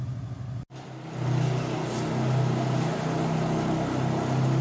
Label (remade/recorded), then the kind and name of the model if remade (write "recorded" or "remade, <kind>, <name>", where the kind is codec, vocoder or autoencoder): recorded